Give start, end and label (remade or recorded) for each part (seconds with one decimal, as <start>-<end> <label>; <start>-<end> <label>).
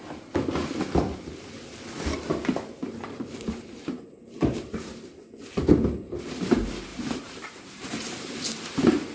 0.0-2.8 recorded; 2.8-4.8 remade; 4.8-6.9 recorded; 6.9-8.3 remade; 8.3-9.1 recorded